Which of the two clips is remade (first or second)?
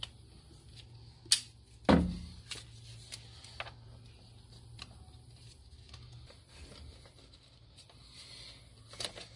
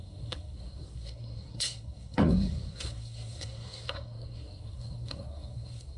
second